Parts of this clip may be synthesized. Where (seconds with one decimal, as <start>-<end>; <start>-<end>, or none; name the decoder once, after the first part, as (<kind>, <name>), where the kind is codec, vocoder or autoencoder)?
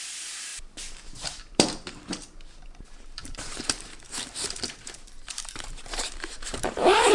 0.0-0.5 (vocoder, BigVGAN v2); 1.4-7.1